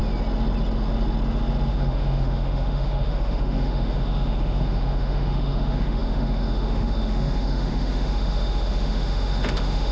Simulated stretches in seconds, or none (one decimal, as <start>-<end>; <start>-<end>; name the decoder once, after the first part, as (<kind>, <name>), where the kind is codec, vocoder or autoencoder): 1.7-9.9 (autoencoder, DAC-VAE)